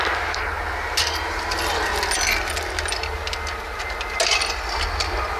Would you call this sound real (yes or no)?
yes